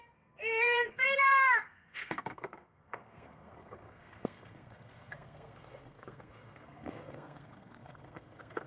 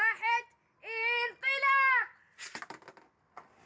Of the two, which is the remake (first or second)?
first